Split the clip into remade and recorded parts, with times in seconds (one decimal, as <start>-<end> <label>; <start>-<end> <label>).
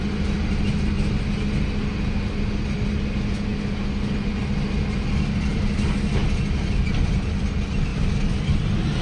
0.0-9.0 recorded